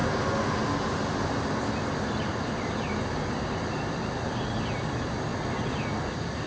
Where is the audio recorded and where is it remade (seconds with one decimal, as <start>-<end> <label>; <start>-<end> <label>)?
0.0-2.7 recorded; 2.7-5.3 remade; 5.3-6.1 recorded; 6.1-6.5 remade